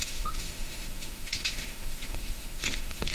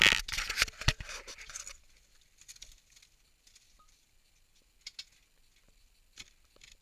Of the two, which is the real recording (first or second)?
second